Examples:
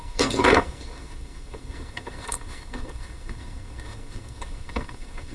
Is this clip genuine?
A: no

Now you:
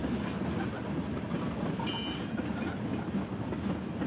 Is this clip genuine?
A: yes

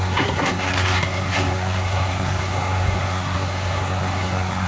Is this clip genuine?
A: no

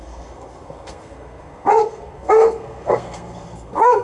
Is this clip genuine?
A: no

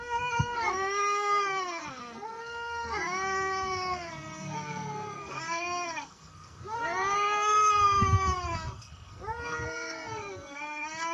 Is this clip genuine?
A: no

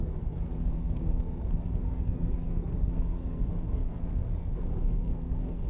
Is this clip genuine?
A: no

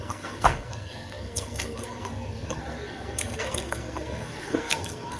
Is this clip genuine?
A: no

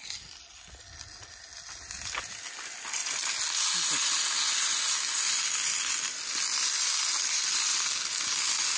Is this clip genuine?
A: yes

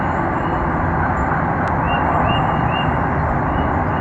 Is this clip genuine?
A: yes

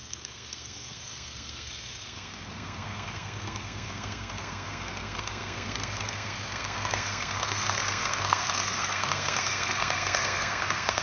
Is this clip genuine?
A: no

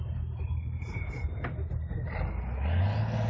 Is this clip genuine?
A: yes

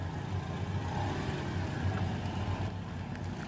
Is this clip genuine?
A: yes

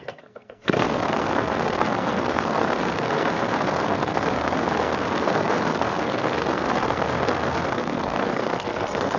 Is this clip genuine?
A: no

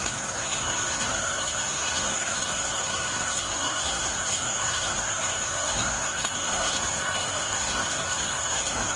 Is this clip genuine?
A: no